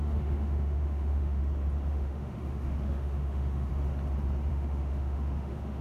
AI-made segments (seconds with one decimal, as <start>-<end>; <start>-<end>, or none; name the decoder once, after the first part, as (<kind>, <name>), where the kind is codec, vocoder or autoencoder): 0.0-1.4 (autoencoder, DAC-VAE); 1.9-3.7; 4.5-5.8